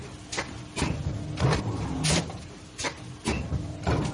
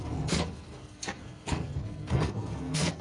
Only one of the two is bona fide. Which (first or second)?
first